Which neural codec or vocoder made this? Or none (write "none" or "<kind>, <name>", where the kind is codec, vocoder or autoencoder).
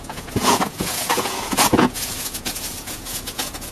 vocoder, Vocos